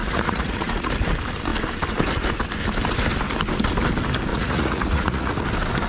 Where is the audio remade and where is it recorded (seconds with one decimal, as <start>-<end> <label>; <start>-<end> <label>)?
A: 0.0-0.9 remade; 0.9-4.3 recorded; 4.3-5.4 remade; 5.4-5.9 recorded